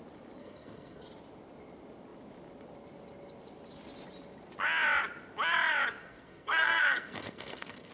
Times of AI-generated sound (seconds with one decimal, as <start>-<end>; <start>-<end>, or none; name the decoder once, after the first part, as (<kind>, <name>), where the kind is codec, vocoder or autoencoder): 0.4-1.0 (codec, SNAC); 6.0-7.9